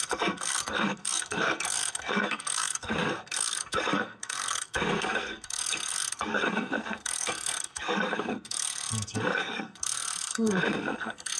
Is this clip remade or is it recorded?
remade